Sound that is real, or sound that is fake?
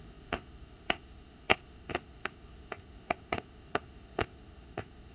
fake